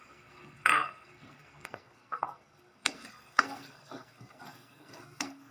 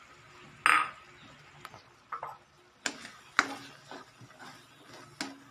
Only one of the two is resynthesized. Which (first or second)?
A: first